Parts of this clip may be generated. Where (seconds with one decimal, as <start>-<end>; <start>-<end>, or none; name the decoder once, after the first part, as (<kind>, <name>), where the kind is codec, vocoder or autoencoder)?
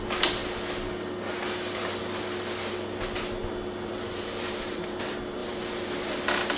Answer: none